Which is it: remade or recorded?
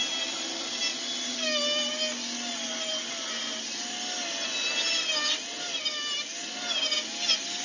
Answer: recorded